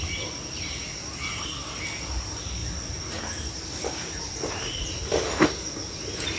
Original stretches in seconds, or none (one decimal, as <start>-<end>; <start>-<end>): 0.0-6.4